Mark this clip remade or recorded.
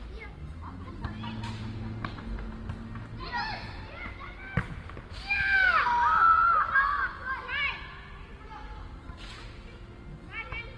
recorded